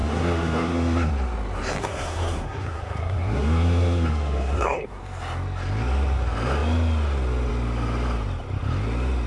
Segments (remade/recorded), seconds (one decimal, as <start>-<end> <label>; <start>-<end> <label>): 0.0-1.1 remade; 1.1-1.8 recorded; 1.8-5.0 remade; 5.0-9.3 recorded

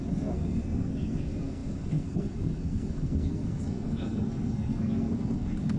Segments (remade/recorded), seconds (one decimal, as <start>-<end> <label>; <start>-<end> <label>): 0.0-5.8 remade

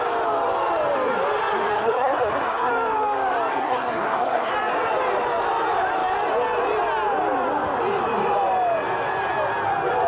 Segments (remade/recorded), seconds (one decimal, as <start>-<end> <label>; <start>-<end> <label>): 0.0-1.7 recorded; 1.7-2.7 remade; 2.7-3.5 recorded; 3.5-4.5 remade; 4.5-10.1 recorded

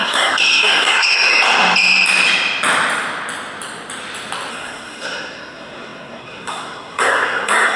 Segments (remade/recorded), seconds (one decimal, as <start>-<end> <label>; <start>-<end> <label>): 0.0-1.3 remade; 1.3-4.5 recorded; 4.5-7.8 remade

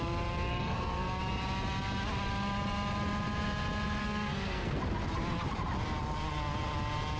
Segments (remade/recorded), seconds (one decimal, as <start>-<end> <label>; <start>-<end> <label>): 0.0-0.5 recorded; 0.5-1.2 remade; 1.2-4.0 recorded; 4.0-4.8 remade; 4.8-7.2 recorded

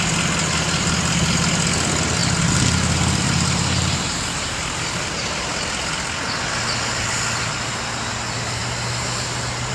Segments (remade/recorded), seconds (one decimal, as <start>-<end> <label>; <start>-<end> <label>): 0.0-9.7 recorded

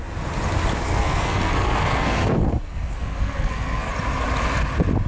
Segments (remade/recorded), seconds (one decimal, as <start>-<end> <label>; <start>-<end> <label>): 0.0-0.8 recorded; 0.8-3.9 remade; 3.9-5.1 recorded